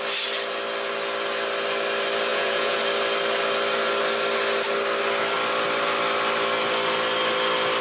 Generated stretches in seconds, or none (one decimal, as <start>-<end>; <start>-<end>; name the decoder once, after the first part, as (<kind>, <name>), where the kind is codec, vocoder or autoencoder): 2.3-2.8 (vocoder, Vocos)